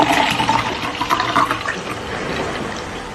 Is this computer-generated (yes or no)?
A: no